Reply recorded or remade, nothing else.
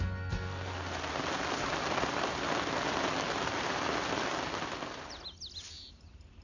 recorded